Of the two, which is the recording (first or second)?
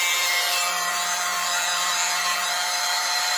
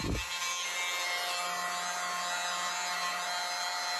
second